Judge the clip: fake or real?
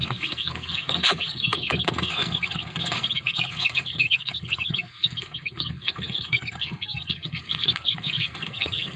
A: fake